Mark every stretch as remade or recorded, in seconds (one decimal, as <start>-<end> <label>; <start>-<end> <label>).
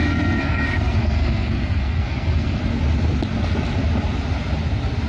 0.0-2.6 remade; 2.6-5.1 recorded